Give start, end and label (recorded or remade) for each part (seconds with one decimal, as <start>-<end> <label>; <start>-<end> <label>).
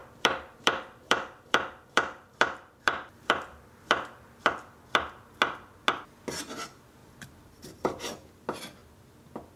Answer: 0.0-5.0 remade; 5.0-7.0 recorded; 7.0-8.0 remade; 8.0-9.6 recorded